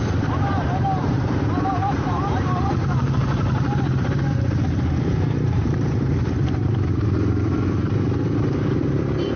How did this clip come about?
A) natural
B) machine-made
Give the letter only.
B